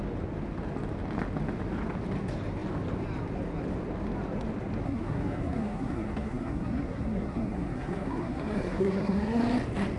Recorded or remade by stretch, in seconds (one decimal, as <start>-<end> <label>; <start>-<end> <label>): 0.0-4.8 recorded; 4.8-9.4 remade; 9.4-10.0 recorded